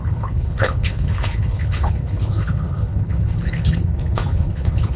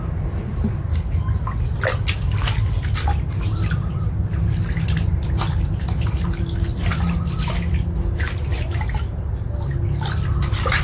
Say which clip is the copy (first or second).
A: first